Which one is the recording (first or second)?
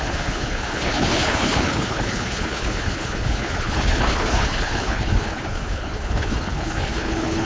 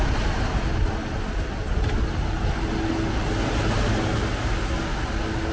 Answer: second